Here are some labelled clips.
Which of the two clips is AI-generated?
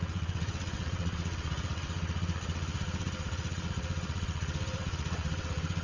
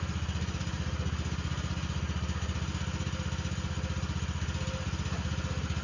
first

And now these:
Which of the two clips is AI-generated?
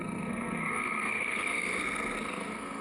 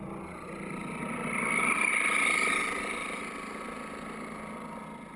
first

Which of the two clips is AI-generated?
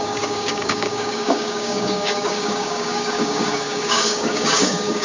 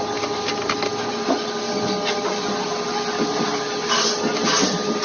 first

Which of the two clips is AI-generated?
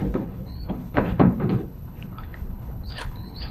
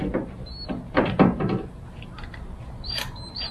first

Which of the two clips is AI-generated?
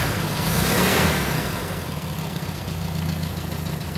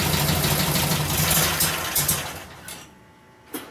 first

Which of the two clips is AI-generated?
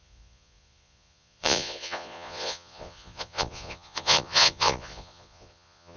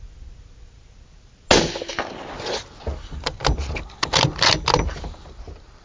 first